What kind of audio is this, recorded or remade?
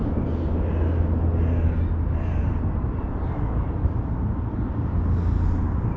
recorded